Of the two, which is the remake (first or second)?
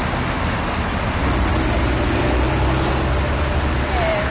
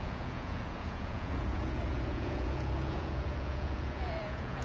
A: second